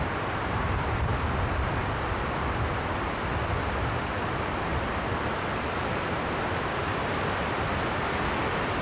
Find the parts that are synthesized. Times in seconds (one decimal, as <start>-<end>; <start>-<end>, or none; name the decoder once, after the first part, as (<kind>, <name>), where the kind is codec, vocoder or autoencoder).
0.0-8.8 (vocoder, BigVGAN v2)